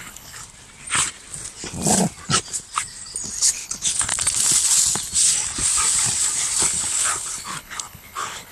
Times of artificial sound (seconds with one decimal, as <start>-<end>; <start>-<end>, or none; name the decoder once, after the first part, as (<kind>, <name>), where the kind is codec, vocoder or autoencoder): 0.0-0.4 (codec, HILCodec); 3.4-4.1; 6.6-8.5